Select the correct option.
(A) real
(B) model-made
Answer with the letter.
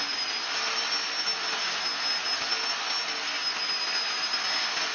A